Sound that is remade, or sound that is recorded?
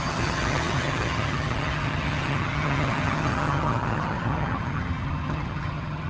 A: remade